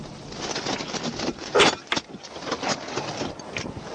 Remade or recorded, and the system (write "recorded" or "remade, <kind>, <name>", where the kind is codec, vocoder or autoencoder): recorded